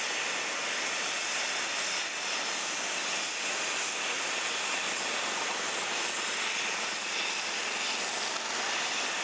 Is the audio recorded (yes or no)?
yes